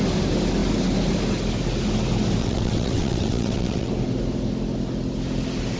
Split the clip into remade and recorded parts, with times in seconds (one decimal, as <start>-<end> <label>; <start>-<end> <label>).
0.0-2.4 recorded; 2.4-3.9 remade; 3.9-5.8 recorded